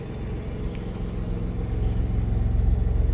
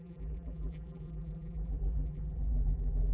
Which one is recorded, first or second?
first